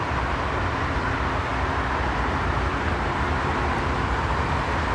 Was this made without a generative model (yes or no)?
yes